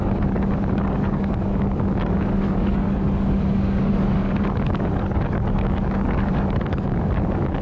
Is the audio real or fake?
fake